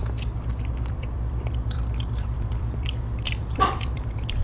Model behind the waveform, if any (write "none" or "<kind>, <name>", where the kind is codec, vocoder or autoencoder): vocoder, BigVGAN v2